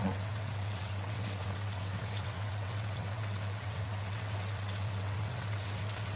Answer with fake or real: fake